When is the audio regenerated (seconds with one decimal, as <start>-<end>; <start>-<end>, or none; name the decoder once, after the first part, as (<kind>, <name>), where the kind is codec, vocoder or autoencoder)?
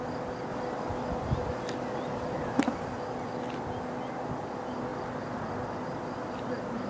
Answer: none